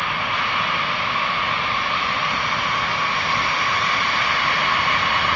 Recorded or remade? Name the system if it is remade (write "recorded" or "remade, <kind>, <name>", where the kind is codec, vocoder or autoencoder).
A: recorded